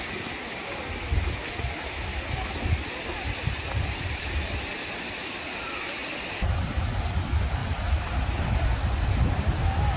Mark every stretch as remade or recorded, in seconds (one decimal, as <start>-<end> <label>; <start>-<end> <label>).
0.0-7.6 recorded; 7.6-8.6 remade; 8.6-10.0 recorded